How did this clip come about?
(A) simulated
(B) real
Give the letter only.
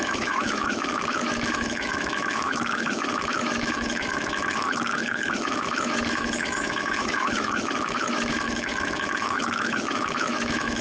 A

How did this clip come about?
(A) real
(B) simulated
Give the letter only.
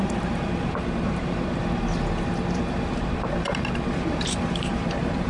B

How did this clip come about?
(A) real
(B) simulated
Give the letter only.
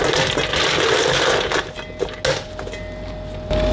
A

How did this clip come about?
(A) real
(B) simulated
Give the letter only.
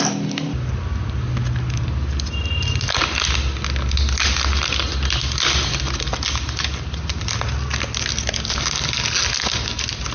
A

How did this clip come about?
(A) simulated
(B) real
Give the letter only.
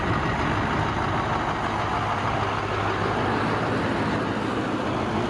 B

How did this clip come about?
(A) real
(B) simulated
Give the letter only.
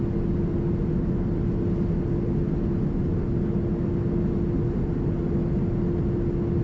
A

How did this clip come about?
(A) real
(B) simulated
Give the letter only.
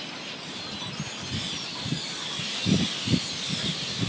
A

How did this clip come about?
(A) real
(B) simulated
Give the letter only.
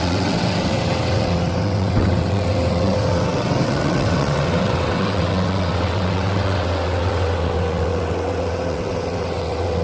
B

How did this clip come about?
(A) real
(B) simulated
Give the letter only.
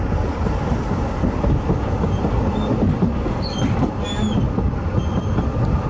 A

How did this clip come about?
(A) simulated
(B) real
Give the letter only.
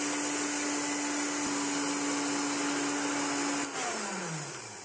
B